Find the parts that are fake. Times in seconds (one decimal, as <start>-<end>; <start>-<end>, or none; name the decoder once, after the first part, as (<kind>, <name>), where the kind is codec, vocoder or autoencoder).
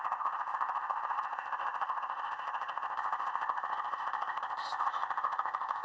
0.0-5.8 (codec, ZipCodec)